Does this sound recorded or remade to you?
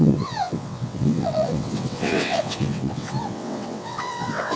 remade